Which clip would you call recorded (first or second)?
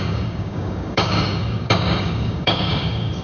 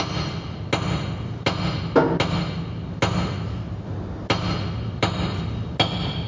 second